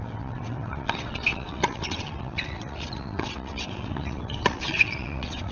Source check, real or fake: fake